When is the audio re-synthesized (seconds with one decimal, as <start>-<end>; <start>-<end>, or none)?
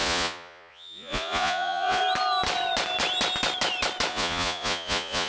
0.0-2.0; 4.1-5.3